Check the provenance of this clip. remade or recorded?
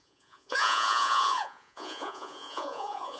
remade